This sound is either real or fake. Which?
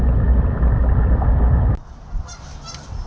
real